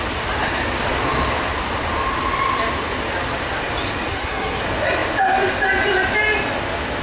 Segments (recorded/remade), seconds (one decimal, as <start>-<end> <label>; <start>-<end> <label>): 0.0-4.1 recorded; 4.1-4.6 remade; 4.6-7.0 recorded

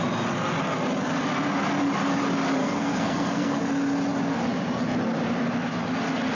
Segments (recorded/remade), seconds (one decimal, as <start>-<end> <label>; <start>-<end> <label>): 0.0-2.6 recorded; 2.6-3.6 remade; 3.6-6.3 recorded

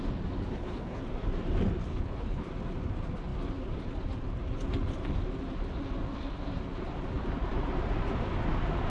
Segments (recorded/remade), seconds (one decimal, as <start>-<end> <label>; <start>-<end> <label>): 0.0-0.5 recorded; 0.5-1.0 remade; 1.0-1.9 recorded; 1.9-2.4 remade; 2.4-8.9 recorded

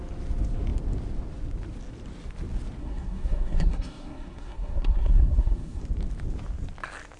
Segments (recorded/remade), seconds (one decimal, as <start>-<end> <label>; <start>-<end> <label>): 0.0-2.8 recorded; 2.8-5.8 remade; 5.8-7.2 recorded